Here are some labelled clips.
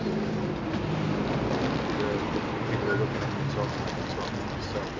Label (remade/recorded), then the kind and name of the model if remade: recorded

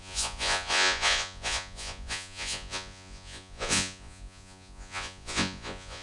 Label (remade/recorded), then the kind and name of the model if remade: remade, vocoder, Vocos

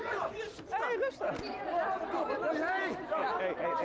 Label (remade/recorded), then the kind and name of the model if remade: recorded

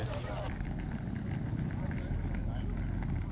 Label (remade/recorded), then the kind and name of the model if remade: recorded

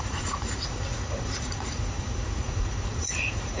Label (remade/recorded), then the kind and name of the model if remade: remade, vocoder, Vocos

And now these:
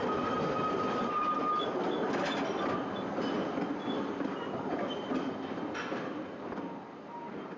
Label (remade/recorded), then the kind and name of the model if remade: recorded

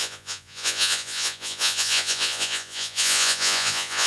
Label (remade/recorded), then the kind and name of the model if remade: remade, vocoder, Vocos